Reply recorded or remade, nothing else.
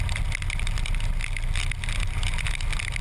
recorded